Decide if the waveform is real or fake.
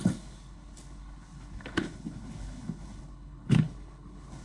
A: fake